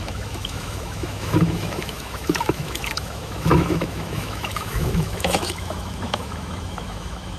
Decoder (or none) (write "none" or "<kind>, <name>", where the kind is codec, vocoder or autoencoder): autoencoder, DAC-VAE